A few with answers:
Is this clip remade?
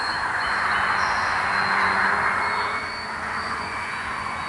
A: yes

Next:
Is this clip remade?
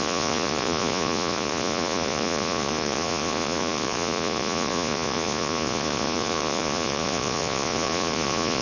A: yes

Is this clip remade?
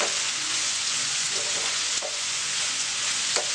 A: yes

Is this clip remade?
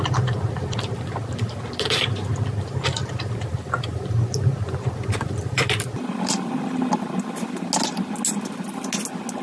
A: no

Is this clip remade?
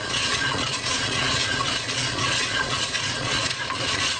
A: yes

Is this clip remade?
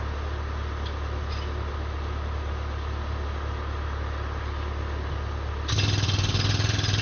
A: no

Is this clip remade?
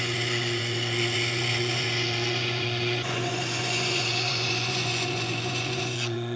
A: yes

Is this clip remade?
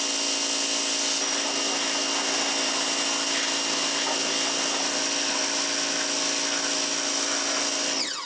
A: no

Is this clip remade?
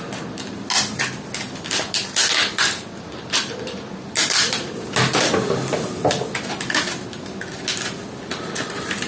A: no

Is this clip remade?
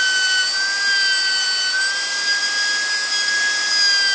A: no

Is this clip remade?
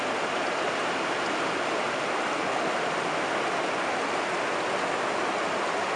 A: no